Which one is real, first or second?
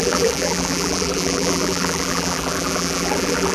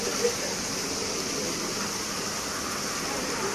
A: second